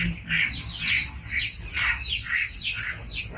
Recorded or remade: recorded